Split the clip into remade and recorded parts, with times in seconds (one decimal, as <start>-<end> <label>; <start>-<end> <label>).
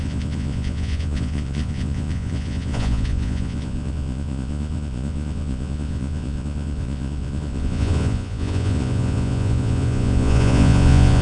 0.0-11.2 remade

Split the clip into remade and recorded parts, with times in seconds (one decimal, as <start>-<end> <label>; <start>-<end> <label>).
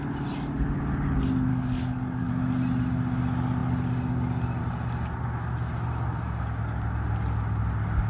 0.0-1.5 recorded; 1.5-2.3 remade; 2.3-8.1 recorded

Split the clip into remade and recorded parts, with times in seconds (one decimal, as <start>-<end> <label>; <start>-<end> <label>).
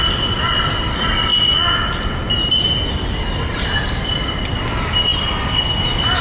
0.0-6.2 recorded